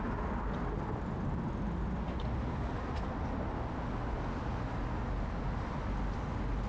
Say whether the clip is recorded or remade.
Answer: recorded